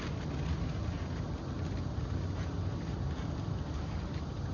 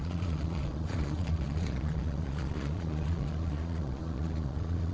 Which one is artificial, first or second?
second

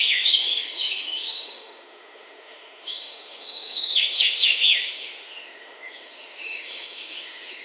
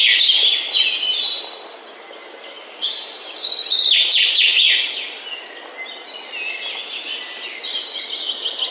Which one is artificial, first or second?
first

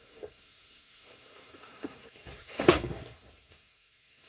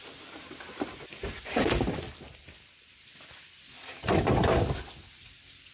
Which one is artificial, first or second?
first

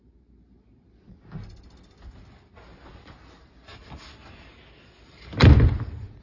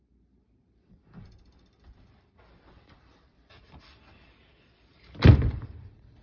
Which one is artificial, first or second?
second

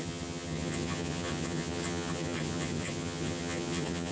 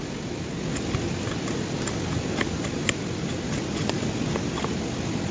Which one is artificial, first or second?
first